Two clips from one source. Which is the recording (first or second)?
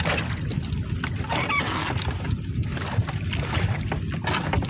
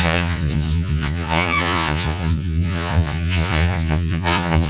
first